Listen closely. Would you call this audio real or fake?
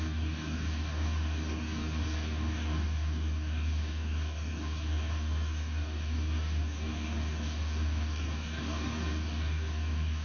fake